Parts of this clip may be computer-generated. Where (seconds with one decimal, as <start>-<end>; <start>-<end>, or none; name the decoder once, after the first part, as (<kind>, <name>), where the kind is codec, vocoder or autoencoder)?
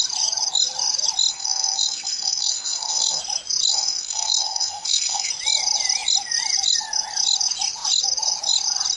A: 1.3-3.2 (codec, SNAC); 3.7-5.3